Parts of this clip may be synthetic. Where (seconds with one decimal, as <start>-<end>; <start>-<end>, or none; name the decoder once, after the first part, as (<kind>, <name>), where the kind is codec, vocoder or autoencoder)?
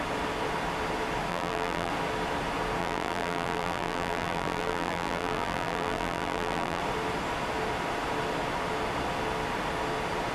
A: 1.3-1.9 (vocoder, BigVGAN v2); 2.8-6.8